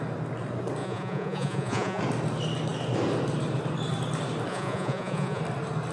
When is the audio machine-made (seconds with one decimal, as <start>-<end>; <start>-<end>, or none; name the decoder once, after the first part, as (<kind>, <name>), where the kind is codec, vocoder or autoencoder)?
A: 0.8-2.0 (vocoder, Vocos); 4.5-5.4